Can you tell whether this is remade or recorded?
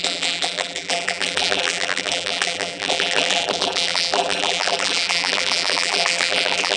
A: remade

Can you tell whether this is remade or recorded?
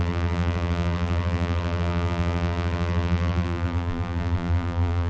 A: remade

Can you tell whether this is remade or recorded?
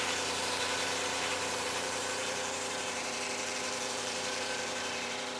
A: remade